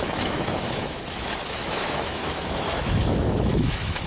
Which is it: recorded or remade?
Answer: remade